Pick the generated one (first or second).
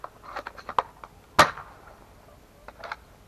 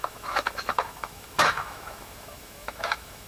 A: second